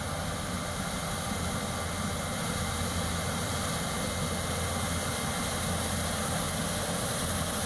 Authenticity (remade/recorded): recorded